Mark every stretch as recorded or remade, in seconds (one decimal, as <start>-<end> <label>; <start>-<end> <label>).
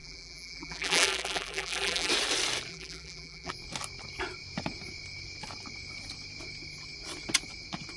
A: 0.0-2.1 remade; 2.1-2.7 recorded; 2.7-3.5 remade; 3.5-8.0 recorded